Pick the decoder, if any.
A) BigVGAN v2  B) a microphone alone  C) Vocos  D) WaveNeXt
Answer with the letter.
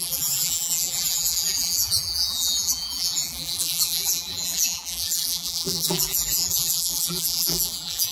A